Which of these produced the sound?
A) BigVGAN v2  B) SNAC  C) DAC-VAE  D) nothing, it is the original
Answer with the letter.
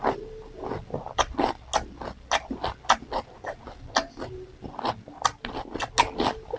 D